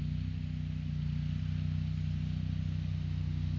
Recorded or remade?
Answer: recorded